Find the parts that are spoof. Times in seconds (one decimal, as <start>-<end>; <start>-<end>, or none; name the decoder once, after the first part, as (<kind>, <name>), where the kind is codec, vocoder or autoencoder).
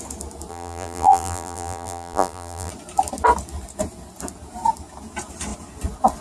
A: 0.5-2.7 (vocoder, BigVGAN v2)